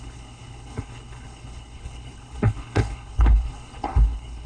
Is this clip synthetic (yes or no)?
yes